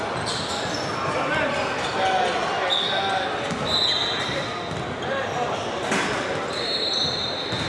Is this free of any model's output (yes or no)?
yes